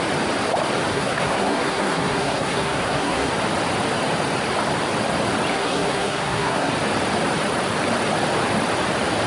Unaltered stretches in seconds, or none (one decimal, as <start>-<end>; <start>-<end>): 0.0-0.9; 3.3-5.5; 6.7-9.3